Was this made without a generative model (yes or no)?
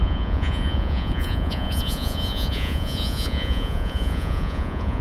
no